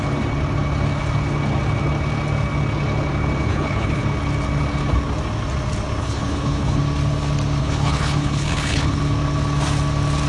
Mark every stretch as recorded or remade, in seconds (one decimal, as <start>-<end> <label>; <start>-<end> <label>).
0.0-3.5 recorded; 3.5-4.0 remade; 4.0-6.0 recorded; 6.0-6.8 remade; 6.8-7.6 recorded; 7.6-9.0 remade; 9.0-10.3 recorded